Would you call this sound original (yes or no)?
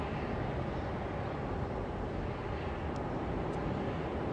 yes